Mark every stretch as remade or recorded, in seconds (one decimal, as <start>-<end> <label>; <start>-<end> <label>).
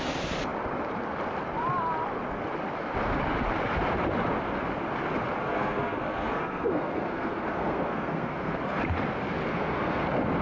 0.0-5.4 recorded; 5.4-8.8 remade; 8.8-9.5 recorded; 9.5-10.0 remade; 10.0-10.4 recorded